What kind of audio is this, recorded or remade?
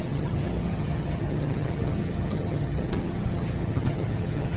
remade